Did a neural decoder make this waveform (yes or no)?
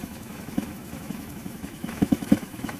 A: yes